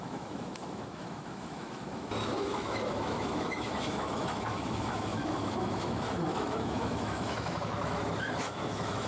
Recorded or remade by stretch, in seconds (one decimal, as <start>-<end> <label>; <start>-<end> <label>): 0.0-9.1 remade